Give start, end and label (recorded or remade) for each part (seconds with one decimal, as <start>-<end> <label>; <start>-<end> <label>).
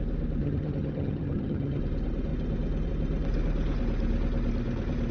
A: 0.0-0.4 recorded; 0.4-1.8 remade; 1.8-5.1 recorded